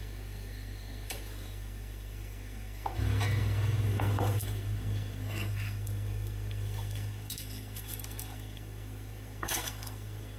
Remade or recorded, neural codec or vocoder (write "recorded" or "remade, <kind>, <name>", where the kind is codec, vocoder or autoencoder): remade, codec, SNAC